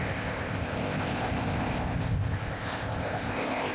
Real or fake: fake